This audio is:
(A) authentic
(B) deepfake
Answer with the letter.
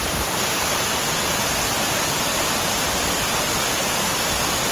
A